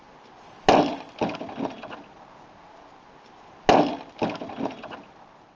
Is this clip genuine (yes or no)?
yes